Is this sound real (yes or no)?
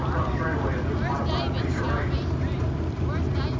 yes